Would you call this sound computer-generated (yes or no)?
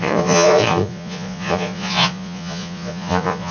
yes